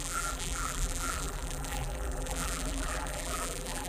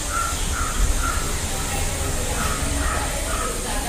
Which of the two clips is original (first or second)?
second